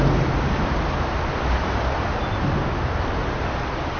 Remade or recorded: recorded